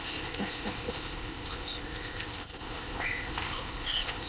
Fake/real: fake